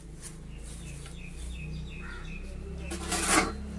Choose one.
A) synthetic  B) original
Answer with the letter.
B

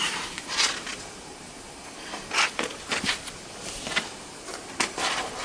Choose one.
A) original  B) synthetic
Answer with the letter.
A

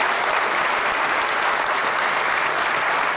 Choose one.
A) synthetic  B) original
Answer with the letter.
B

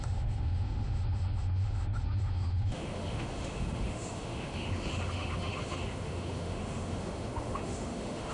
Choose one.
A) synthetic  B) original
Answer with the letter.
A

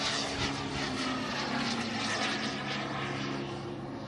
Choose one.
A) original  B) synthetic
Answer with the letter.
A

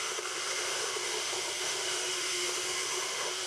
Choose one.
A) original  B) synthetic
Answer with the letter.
B